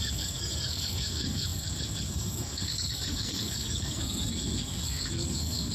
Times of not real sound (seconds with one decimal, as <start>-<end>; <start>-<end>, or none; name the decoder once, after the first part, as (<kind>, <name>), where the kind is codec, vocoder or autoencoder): 0.0-5.7 (codec, SNAC)

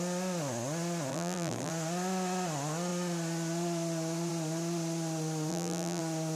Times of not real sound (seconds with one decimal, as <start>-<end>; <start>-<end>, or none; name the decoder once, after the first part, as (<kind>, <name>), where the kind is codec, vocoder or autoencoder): 1.1-1.7 (vocoder, BigVGAN v2); 5.5-6.0

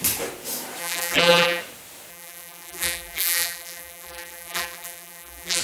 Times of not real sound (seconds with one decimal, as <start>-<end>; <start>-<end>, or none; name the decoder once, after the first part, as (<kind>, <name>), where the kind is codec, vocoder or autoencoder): 0.8-1.6 (vocoder, BigVGAN v2); 2.1-5.6

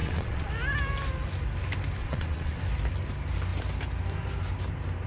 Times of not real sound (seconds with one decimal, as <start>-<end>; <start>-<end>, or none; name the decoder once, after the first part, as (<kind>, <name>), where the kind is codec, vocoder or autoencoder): 0.0-0.5 (vocoder, WaveNeXt); 2.0-2.6

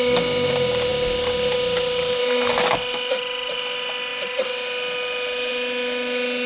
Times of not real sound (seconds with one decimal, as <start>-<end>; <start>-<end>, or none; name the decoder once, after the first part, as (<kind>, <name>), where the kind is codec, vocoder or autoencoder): none

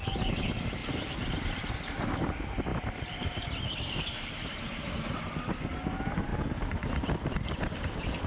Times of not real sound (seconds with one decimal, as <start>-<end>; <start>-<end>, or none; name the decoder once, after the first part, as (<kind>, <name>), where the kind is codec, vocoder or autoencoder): 0.8-1.7 (vocoder, BigVGAN v2); 2.7-5.4; 6.3-7.5

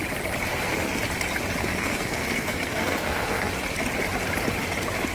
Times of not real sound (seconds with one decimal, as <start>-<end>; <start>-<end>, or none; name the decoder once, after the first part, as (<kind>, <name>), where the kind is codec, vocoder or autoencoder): 0.5-1.0 (codec, SNAC); 1.6-3.5